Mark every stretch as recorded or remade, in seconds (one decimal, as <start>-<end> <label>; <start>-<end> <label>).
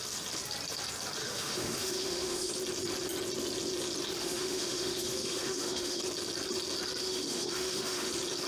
0.0-1.2 recorded; 1.2-2.5 remade; 2.5-4.2 recorded; 4.2-6.0 remade; 6.0-7.0 recorded; 7.0-8.1 remade; 8.1-8.5 recorded